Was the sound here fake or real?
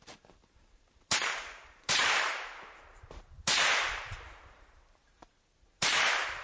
fake